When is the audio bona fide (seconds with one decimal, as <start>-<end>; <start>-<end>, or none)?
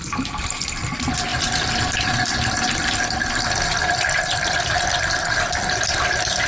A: 0.0-1.3; 5.2-6.5